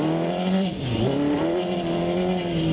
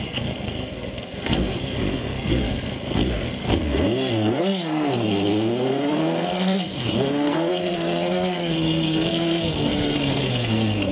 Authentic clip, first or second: first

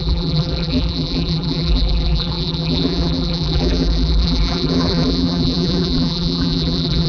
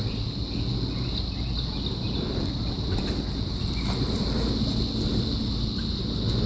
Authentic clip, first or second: second